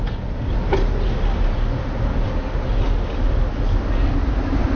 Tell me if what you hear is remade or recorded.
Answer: recorded